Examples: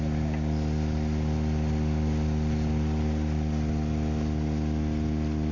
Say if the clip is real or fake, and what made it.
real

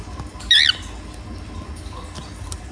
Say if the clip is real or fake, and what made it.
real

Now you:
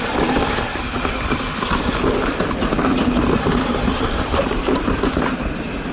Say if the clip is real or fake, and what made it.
real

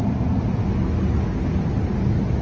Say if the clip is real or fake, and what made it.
real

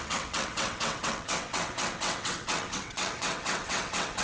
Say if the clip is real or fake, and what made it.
fake, vocoder, WaveNeXt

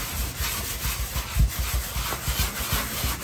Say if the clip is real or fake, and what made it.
real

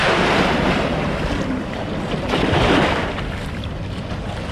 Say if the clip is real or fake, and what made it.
real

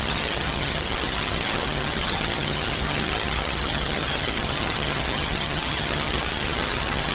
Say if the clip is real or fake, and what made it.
fake, vocoder, HiFi-GAN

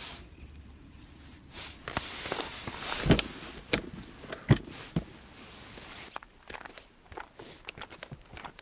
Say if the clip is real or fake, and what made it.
real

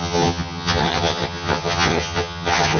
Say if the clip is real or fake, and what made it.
fake, vocoder, HiFi-GAN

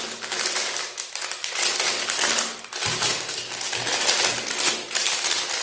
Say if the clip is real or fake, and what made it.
real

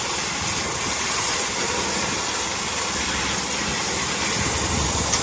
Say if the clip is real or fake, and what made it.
real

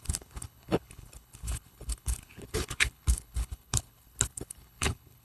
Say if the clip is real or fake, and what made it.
fake, codec, HILCodec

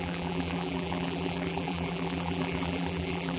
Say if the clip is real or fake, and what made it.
fake, vocoder, BigVGAN v2